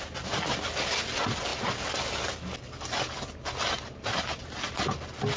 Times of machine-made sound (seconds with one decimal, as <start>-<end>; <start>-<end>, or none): none